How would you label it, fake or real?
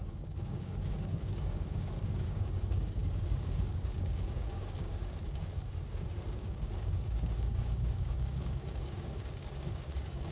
fake